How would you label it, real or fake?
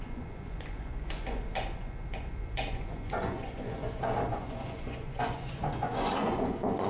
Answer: fake